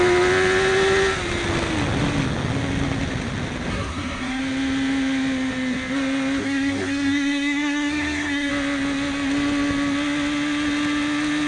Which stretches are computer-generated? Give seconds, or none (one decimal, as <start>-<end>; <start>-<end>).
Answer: 3.7-4.4; 6.4-8.5